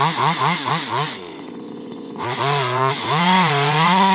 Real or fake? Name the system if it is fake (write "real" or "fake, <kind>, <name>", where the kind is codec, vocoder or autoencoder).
fake, vocoder, Vocos